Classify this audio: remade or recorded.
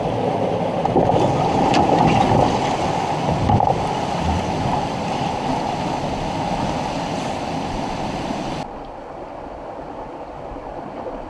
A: recorded